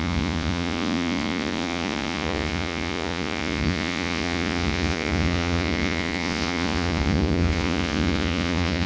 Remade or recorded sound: remade